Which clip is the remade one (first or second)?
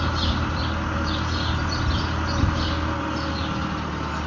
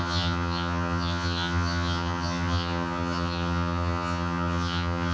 second